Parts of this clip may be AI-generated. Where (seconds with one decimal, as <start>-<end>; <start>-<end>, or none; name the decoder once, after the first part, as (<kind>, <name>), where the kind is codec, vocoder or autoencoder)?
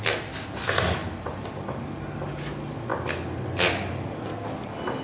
1.0-1.5 (vocoder, BigVGAN v2)